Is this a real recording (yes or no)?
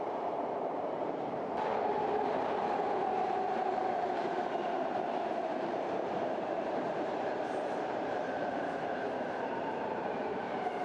no